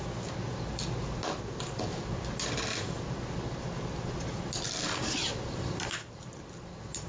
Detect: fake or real real